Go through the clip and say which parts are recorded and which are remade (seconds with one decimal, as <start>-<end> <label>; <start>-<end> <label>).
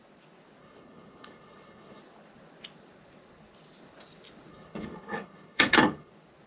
0.0-0.6 recorded; 0.6-2.0 remade; 2.0-4.5 recorded; 4.5-6.1 remade; 6.1-6.5 recorded